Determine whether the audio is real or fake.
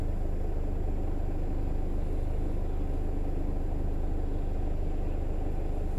real